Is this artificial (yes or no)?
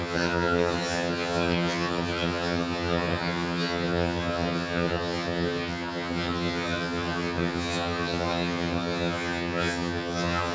yes